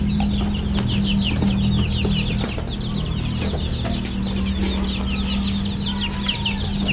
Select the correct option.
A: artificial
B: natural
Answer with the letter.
B